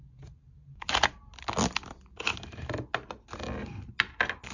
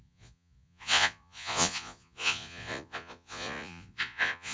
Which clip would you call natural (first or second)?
first